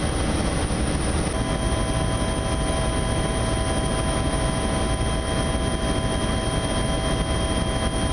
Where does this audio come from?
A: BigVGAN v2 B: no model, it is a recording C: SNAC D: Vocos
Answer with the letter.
B